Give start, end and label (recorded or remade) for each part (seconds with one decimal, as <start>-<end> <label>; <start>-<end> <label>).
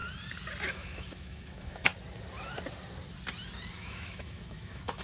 0.0-0.7 recorded; 0.7-1.9 remade; 1.9-3.7 recorded; 3.7-5.0 remade